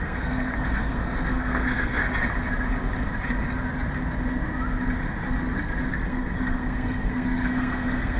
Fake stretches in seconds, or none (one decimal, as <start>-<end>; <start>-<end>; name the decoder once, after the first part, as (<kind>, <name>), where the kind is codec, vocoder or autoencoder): 0.0-2.0 (codec, SNAC); 5.9-8.2